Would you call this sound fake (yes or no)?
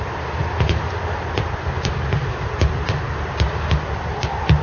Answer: no